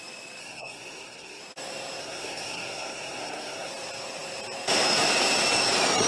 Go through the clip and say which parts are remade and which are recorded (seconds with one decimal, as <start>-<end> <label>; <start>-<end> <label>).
0.0-0.4 recorded; 0.4-1.4 remade; 1.4-2.0 recorded; 2.0-3.7 remade; 3.7-6.1 recorded